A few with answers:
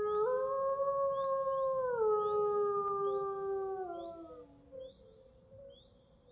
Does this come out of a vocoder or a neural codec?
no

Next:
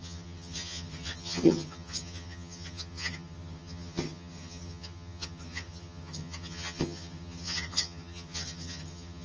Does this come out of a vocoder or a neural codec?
yes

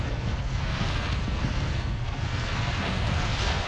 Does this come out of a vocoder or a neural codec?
yes